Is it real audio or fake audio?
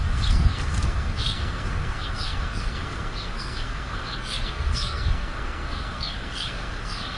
fake